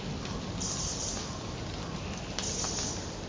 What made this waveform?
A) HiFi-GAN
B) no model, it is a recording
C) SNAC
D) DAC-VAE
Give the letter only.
B